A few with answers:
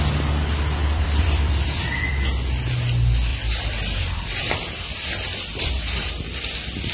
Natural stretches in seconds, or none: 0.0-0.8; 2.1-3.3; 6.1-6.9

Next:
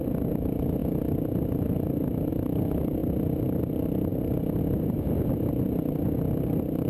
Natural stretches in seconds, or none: 0.0-6.9

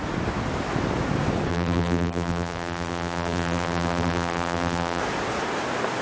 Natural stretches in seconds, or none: 0.0-1.5; 5.0-6.0